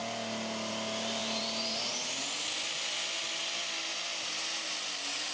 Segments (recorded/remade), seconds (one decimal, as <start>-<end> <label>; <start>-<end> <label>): 0.0-1.2 recorded; 1.2-1.9 remade; 1.9-5.3 recorded